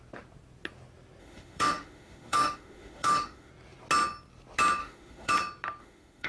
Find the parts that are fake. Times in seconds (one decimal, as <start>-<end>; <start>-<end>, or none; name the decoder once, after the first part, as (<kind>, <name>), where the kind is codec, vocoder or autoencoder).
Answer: 1.2-3.5 (autoencoder, DAC-VAE); 4.8-5.3; 5.8-6.3